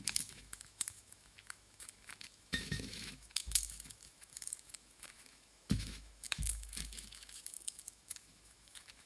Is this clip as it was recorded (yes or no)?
no